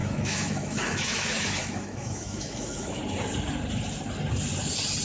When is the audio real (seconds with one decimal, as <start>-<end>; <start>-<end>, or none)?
3.0-5.0